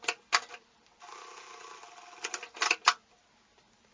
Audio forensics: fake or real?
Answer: real